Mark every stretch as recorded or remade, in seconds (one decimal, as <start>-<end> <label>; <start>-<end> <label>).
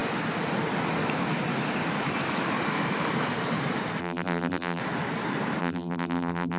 0.0-4.0 recorded; 4.0-4.8 remade; 4.8-5.6 recorded; 5.6-6.6 remade